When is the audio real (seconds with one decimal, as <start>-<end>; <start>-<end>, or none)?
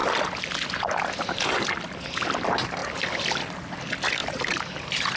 0.0-4.2